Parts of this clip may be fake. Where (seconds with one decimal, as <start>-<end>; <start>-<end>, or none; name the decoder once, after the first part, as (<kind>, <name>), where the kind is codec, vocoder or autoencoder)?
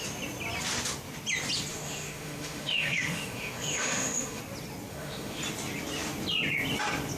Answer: 1.7-4.4 (autoencoder, DAC-VAE); 4.9-5.4